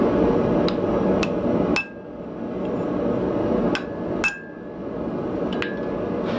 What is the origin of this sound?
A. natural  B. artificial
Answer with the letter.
A